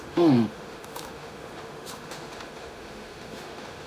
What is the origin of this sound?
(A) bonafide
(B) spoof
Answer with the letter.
B